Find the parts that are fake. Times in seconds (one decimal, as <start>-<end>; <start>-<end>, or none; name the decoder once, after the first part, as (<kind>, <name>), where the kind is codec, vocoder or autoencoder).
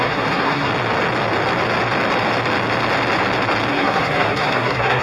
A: 0.0-0.7 (codec, SNAC); 3.7-5.0